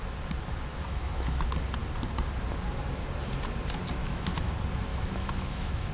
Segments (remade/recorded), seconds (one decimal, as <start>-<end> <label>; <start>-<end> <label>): 0.0-0.7 recorded; 0.7-1.4 remade; 1.4-4.0 recorded; 4.0-4.5 remade; 4.5-4.9 recorded; 4.9-5.9 remade

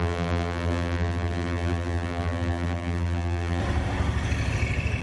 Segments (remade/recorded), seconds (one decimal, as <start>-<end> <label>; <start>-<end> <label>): 0.0-3.6 remade; 3.6-5.0 recorded

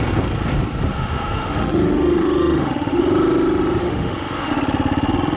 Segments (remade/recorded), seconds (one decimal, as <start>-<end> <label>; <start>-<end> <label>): 0.0-0.9 recorded; 0.9-3.0 remade; 3.0-3.8 recorded; 3.8-4.5 remade; 4.5-5.4 recorded

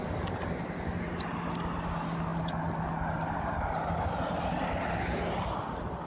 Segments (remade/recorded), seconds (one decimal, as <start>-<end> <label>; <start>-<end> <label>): 0.0-6.1 recorded

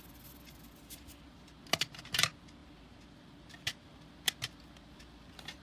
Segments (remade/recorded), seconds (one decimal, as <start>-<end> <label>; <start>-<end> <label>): 0.0-5.6 recorded

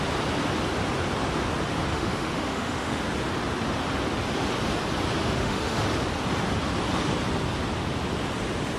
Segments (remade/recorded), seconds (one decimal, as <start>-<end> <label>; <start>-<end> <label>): 0.0-1.9 recorded; 1.9-3.0 remade; 3.0-5.2 recorded; 5.2-5.8 remade; 5.8-8.8 recorded

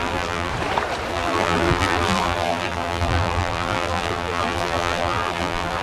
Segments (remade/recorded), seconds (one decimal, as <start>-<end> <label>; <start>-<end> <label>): 0.0-0.5 remade; 0.5-1.1 recorded; 1.1-5.8 remade